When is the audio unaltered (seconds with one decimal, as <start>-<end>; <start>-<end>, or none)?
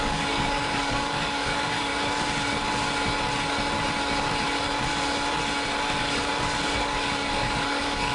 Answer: 1.9-6.8